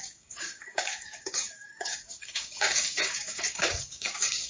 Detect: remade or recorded remade